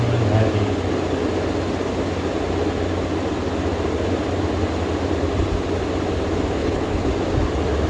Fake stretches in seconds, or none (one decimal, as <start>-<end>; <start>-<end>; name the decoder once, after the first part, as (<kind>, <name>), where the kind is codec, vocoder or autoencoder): 6.6-7.1 (codec, HILCodec)